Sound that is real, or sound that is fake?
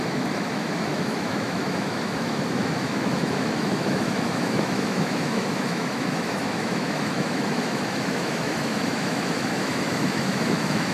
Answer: fake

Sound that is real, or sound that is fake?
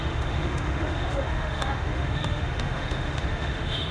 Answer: fake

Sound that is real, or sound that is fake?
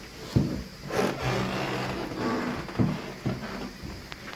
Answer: real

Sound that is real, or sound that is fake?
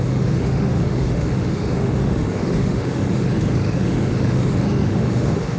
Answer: fake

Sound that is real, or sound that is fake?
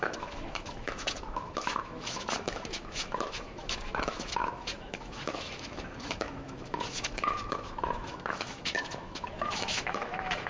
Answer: fake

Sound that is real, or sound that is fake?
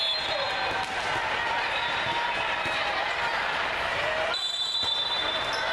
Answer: real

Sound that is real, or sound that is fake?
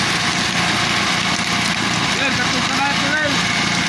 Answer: real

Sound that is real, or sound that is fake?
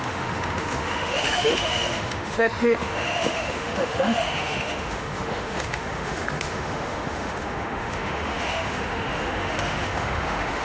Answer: fake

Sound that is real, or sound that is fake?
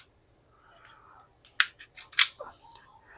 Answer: real